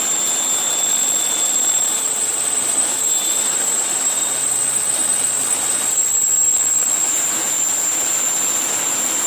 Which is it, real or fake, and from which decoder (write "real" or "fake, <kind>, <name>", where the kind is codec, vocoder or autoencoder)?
fake, vocoder, BigVGAN v2